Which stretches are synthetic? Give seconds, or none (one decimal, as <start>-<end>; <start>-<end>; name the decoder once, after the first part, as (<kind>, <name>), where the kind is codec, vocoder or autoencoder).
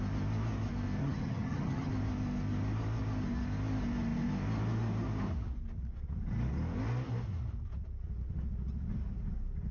1.0-1.9 (vocoder, HiFi-GAN)